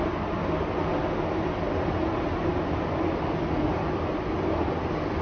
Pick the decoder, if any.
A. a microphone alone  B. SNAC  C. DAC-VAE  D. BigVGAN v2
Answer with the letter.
A